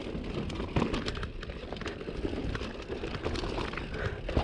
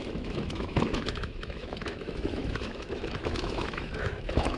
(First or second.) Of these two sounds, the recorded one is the first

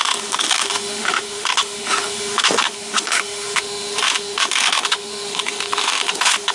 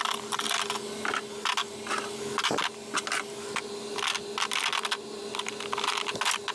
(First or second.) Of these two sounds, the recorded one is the second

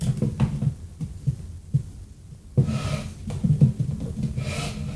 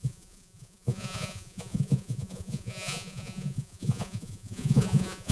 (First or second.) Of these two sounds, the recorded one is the first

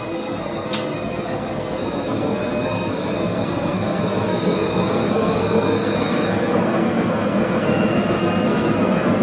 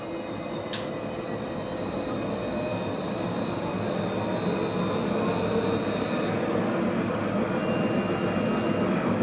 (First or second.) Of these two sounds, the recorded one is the second